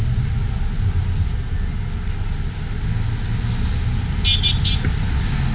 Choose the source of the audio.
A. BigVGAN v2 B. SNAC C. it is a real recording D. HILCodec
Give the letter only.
C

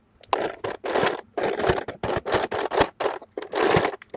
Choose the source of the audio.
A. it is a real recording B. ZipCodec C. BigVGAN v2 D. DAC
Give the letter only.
A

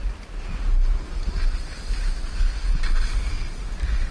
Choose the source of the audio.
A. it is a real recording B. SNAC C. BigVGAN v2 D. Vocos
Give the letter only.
A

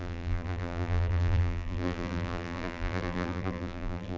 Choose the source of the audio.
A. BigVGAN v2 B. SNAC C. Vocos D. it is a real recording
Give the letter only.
A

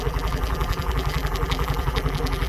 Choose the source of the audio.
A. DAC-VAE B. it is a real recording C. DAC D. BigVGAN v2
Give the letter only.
D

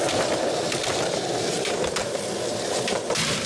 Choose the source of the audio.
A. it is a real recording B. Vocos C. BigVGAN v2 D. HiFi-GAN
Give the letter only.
C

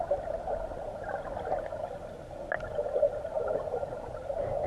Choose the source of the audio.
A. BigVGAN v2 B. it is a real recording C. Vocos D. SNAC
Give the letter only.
B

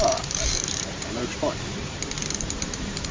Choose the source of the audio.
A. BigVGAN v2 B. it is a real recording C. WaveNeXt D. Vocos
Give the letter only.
A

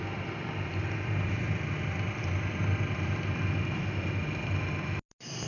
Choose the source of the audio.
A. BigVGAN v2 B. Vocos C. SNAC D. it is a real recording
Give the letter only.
D